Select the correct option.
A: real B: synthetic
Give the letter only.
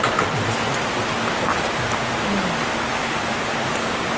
A